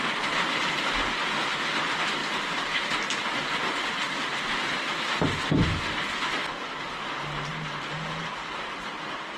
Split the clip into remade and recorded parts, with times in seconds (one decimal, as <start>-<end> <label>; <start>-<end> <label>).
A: 0.0-9.4 recorded